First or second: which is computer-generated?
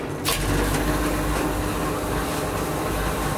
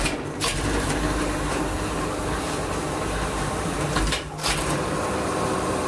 second